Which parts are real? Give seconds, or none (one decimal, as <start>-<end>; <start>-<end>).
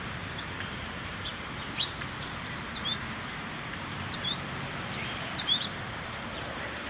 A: none